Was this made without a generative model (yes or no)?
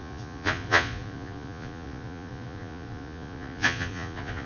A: no